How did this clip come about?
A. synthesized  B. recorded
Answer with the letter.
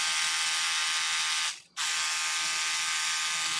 B